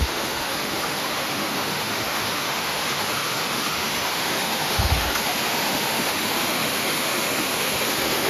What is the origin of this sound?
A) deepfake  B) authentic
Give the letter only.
A